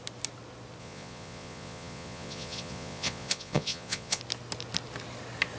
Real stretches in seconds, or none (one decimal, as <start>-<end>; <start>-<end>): 0.0-0.8; 4.2-5.6